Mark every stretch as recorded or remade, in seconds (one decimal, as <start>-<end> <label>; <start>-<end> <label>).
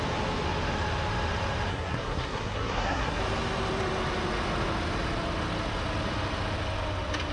0.0-1.7 recorded; 1.7-3.2 remade; 3.2-7.3 recorded